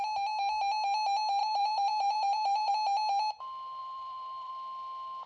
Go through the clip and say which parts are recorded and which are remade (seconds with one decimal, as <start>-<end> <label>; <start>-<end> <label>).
0.0-1.4 recorded; 1.4-2.7 remade; 2.7-3.8 recorded; 3.8-4.5 remade; 4.5-5.3 recorded